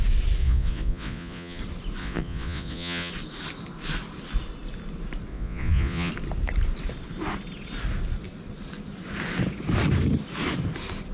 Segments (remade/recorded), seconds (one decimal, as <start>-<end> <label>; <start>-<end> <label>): 0.0-0.4 recorded; 0.4-1.6 remade; 1.6-2.0 recorded; 2.0-3.1 remade; 3.1-5.3 recorded; 5.3-6.1 remade; 6.1-11.1 recorded